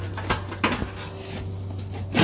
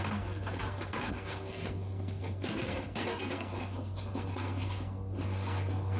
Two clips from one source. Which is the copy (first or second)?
second